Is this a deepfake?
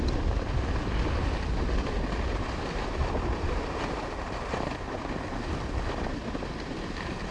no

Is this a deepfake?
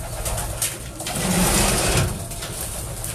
no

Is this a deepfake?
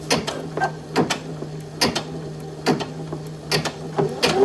no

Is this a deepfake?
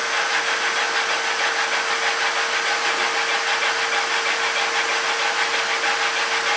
no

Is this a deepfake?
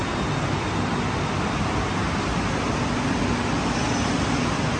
no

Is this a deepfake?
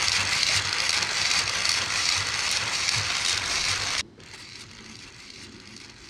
yes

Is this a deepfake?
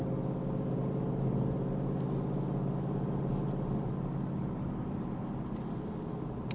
no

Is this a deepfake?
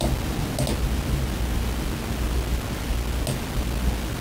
no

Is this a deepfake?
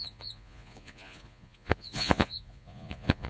yes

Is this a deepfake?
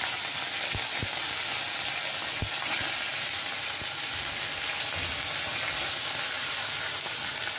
no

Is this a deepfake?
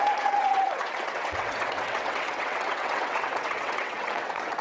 yes